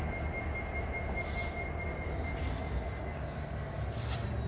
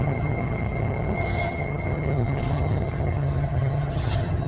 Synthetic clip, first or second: second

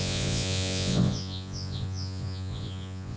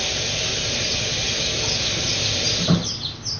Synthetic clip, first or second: first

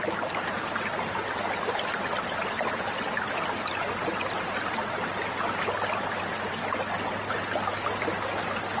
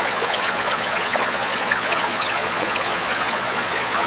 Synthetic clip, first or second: second